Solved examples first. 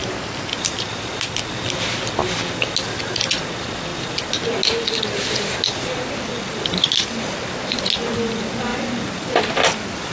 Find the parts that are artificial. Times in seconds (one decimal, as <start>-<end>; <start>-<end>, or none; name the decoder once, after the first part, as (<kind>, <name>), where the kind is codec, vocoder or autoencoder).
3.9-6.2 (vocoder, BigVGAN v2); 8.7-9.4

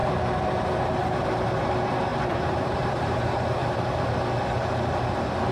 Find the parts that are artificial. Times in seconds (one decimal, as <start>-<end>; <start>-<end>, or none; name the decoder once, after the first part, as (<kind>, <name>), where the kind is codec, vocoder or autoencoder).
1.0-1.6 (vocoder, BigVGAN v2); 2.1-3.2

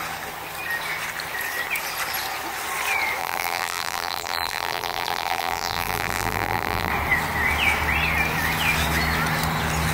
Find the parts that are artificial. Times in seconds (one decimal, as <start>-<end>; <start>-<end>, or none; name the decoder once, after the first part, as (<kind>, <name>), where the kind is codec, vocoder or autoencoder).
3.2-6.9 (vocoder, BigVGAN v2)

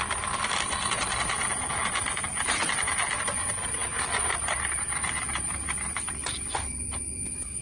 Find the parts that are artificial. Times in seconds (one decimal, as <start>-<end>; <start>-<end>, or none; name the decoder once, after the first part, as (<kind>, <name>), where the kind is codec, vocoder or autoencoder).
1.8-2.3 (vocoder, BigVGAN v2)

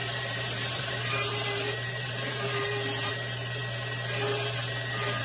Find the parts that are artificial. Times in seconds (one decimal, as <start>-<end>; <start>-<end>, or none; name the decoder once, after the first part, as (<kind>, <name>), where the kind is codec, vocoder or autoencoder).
0.0-3.1 (vocoder, BigVGAN v2)